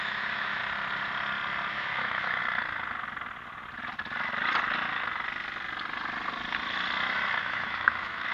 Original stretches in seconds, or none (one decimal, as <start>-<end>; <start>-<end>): 0.6-1.7; 2.4-7.4